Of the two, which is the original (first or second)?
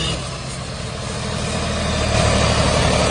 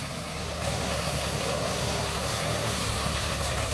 first